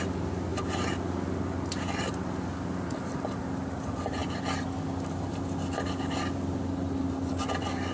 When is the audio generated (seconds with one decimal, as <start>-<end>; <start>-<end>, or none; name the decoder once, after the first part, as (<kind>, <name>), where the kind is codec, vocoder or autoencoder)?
none